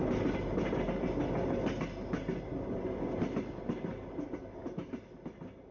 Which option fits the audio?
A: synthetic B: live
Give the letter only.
B